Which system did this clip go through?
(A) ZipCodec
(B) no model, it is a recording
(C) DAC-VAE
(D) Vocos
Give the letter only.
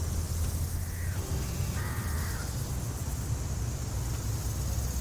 B